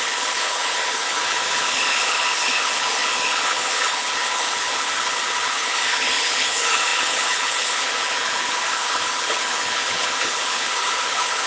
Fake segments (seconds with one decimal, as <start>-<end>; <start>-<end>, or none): 0.0-11.5

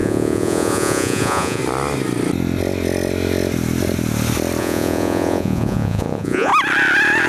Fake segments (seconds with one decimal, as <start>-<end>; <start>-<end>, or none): 0.0-1.6; 4.6-6.5

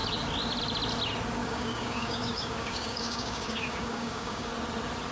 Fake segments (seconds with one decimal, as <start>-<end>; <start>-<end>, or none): 1.4-4.5

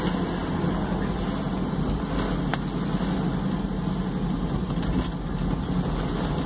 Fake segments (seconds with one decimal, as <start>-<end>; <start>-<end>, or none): none

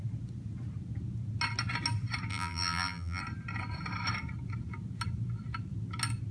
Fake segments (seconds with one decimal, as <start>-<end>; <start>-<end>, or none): 2.3-3.2